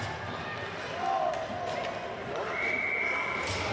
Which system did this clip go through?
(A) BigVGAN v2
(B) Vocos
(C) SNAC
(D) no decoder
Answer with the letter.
D